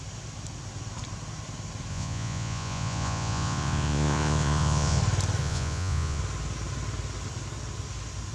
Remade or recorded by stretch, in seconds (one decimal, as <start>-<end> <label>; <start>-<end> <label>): 0.0-1.9 recorded; 1.9-5.0 remade; 5.0-5.4 recorded; 5.4-6.2 remade; 6.2-8.3 recorded